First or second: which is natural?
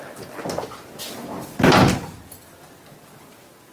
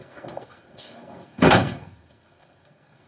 first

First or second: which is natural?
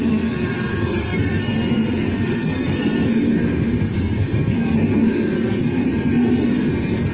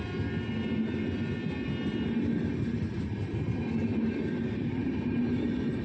second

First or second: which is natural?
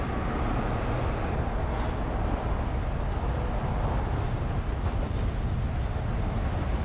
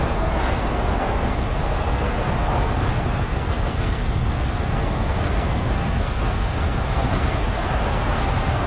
first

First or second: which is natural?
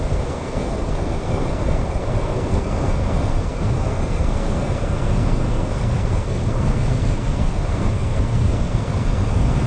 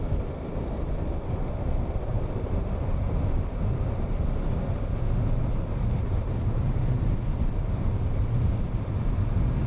second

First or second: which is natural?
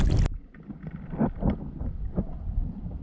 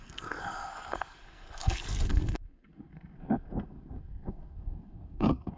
first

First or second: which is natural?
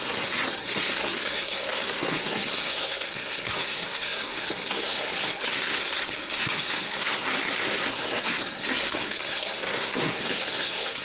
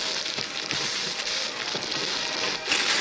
second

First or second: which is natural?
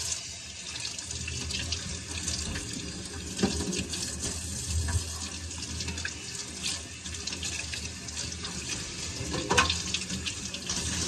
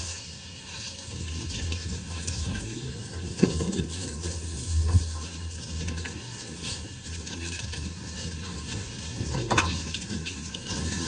first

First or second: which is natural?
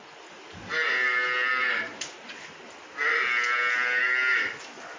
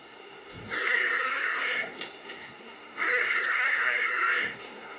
first